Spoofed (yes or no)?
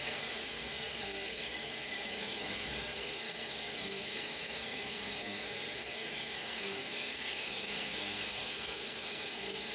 yes